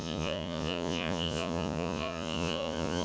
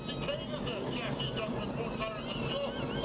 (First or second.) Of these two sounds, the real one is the second